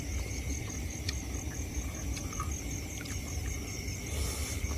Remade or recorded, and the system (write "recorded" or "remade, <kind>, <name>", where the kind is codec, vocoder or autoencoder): remade, vocoder, BigVGAN v2